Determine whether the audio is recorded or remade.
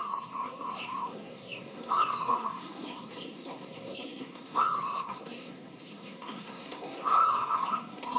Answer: remade